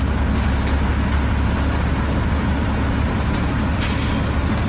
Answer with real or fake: real